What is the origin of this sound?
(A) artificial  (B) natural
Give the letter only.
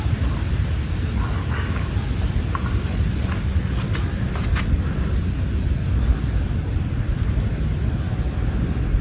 B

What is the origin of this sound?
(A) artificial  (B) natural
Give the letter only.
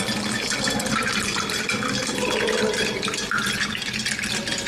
B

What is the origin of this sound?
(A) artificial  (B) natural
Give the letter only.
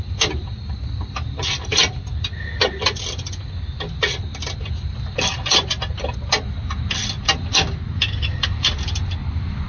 B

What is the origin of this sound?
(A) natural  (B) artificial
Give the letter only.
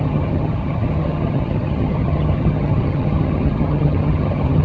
B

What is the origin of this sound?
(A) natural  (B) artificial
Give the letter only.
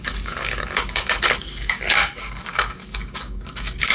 B